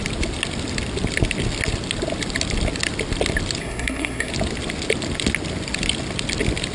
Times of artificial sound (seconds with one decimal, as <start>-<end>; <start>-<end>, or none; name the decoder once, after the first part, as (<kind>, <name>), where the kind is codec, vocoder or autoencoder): 3.6-4.3 (codec, SNAC)